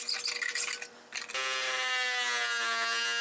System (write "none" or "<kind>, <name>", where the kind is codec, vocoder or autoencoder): none